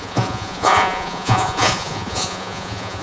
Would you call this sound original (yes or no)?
no